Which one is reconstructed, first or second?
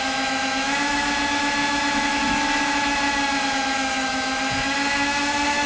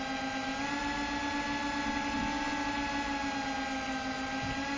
first